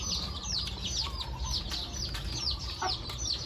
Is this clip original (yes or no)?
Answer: yes